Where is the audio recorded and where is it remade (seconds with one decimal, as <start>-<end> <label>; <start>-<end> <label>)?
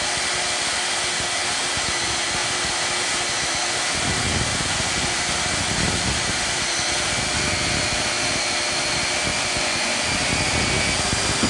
0.0-4.5 recorded; 4.5-5.2 remade; 5.2-9.3 recorded; 9.3-10.0 remade; 10.0-11.5 recorded